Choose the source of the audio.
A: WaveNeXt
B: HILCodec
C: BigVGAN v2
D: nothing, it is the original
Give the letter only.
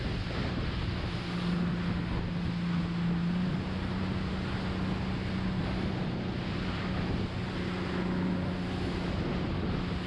D